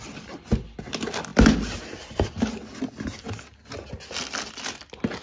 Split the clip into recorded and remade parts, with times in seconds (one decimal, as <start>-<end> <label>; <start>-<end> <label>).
0.0-5.2 recorded